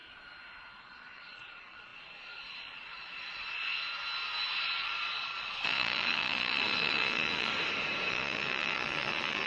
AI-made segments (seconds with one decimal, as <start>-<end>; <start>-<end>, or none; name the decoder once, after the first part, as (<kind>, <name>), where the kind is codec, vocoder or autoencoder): 0.8-3.7 (vocoder, Vocos); 4.6-7.5; 8.1-9.5